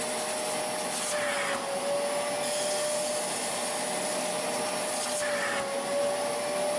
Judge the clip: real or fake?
real